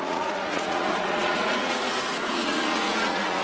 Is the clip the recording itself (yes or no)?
no